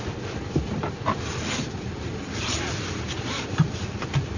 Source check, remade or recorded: recorded